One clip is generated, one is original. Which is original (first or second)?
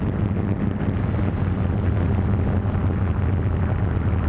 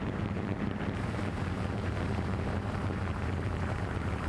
first